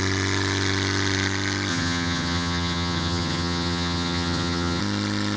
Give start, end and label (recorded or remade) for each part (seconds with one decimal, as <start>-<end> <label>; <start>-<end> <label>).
0.0-1.7 recorded; 1.7-4.8 remade; 4.8-5.4 recorded